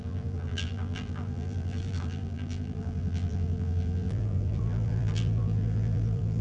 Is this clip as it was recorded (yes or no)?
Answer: no